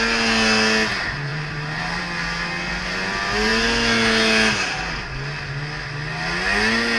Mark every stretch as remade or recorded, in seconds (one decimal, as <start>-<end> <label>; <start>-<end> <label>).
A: 0.0-1.3 recorded; 1.3-2.0 remade; 2.0-7.0 recorded